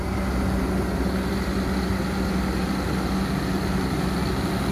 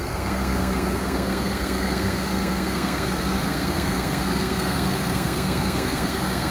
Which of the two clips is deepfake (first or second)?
second